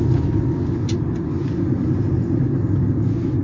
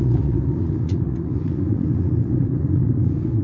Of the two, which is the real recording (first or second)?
first